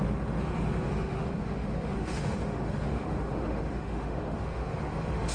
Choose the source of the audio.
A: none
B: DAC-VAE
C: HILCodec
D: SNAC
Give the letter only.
B